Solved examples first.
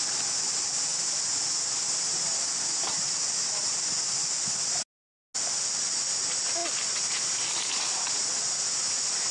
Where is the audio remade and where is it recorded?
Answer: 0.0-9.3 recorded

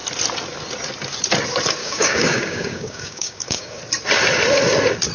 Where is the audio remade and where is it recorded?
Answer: 0.0-1.8 recorded; 1.8-3.8 remade; 3.8-5.1 recorded

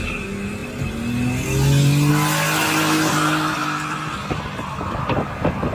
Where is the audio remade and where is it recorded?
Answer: 0.0-5.7 recorded

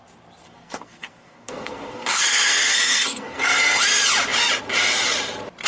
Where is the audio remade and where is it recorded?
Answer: 0.0-0.4 recorded; 0.4-3.8 remade; 3.8-5.7 recorded

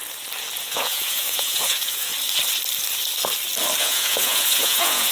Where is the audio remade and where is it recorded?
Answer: 0.0-0.6 recorded; 0.6-2.1 remade; 2.1-3.8 recorded; 3.8-5.1 remade

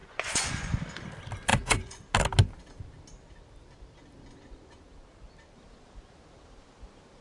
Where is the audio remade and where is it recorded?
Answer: 0.0-0.7 remade; 0.7-1.5 recorded; 1.5-2.0 remade; 2.0-7.2 recorded